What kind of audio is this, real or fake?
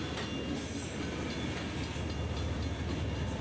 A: real